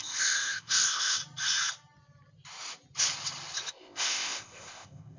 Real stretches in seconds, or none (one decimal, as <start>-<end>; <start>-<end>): 1.2-3.7